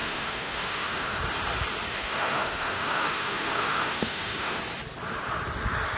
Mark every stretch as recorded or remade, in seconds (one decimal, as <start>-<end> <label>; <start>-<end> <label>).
0.0-1.2 remade; 1.2-1.9 recorded; 1.9-4.6 remade; 4.6-6.0 recorded